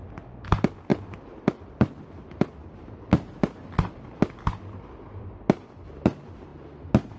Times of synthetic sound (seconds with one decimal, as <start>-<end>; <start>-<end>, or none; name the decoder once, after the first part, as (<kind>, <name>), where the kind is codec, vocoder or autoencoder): none